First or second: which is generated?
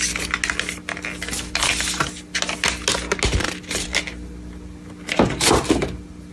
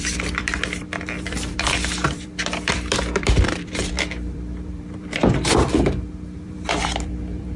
second